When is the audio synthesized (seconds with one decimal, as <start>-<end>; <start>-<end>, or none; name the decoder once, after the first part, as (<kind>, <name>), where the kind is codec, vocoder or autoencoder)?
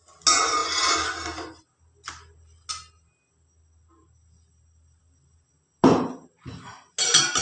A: none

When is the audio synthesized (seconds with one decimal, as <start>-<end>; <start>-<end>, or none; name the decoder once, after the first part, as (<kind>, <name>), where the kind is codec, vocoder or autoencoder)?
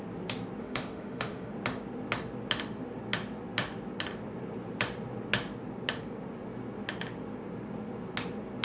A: 0.6-1.5 (autoencoder, DAC-VAE)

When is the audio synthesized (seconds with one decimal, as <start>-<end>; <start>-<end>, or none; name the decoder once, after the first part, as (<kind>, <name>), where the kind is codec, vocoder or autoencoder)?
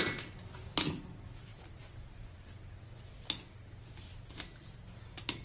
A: none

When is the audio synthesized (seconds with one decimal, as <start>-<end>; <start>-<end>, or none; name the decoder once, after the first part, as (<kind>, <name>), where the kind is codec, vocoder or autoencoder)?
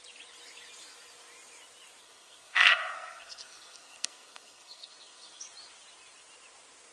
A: 2.0-5.4 (codec, SNAC)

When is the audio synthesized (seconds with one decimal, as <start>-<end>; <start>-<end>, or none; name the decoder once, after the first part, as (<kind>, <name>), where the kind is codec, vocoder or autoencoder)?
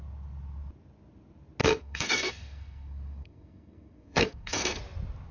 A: 1.6-4.8 (codec, SNAC)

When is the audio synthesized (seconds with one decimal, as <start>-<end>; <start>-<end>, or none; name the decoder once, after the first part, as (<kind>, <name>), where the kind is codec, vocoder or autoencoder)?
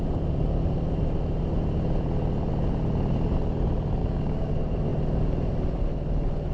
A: 4.0-4.5 (codec, DAC)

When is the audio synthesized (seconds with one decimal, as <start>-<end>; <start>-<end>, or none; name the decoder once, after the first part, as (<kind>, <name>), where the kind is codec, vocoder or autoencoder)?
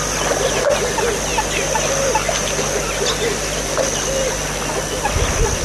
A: none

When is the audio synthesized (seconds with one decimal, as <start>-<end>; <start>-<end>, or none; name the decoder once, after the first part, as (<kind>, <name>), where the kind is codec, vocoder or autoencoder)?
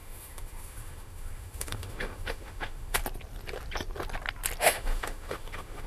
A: 0.0-3.0 (autoencoder, DAC-VAE); 4.6-5.9